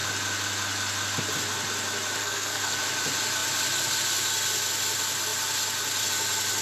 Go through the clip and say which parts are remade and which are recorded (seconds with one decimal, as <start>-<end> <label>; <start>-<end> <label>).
0.0-2.2 recorded; 2.2-2.8 remade; 2.8-6.6 recorded